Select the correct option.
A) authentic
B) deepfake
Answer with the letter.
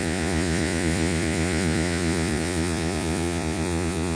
B